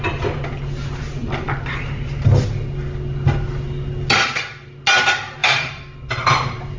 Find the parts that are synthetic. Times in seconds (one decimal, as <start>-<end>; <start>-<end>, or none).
none